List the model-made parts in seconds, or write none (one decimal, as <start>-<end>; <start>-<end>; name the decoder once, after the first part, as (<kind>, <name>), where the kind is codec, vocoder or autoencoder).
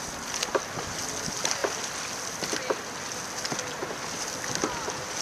none